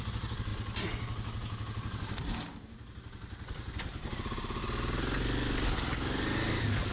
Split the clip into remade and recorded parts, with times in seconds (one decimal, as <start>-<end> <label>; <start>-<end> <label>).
0.0-6.9 recorded

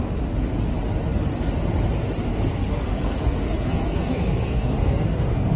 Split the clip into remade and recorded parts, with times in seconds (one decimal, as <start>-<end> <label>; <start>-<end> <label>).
0.0-2.3 recorded; 2.3-5.6 remade

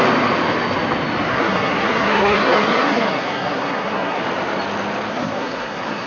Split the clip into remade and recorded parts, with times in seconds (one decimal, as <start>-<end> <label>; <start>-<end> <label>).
0.0-1.3 recorded; 1.3-4.2 remade; 4.2-5.1 recorded; 5.1-6.1 remade

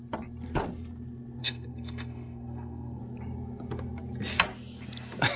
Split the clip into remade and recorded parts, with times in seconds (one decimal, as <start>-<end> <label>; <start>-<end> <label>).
0.0-1.4 recorded; 1.4-3.0 remade; 3.0-5.4 recorded

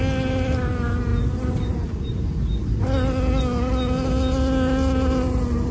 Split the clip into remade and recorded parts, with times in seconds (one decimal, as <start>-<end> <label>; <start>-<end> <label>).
0.0-5.7 recorded